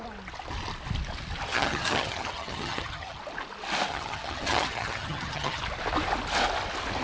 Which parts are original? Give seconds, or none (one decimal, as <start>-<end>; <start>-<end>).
0.0-1.5; 3.2-3.9; 5.6-7.0